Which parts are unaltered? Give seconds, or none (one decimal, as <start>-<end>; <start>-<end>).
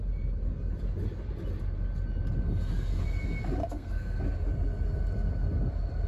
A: 0.0-3.6; 4.2-6.1